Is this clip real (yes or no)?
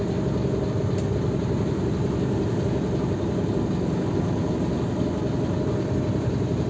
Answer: yes